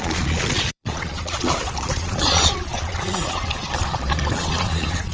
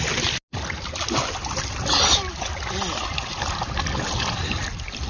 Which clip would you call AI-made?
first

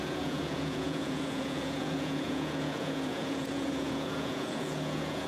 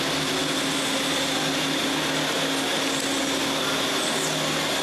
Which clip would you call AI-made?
first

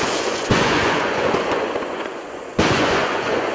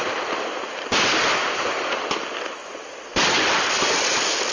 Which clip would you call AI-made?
first